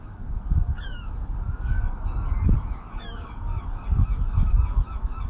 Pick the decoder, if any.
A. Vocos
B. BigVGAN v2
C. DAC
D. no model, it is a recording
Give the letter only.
C